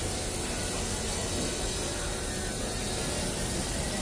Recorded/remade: recorded